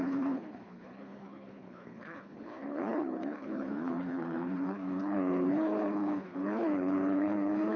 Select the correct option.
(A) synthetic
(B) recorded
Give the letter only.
A